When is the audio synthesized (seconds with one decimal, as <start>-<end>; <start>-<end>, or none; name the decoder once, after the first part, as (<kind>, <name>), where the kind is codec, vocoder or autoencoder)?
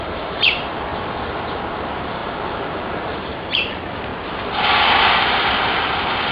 0.0-0.9 (vocoder, BigVGAN v2); 1.8-4.1; 5.4-6.3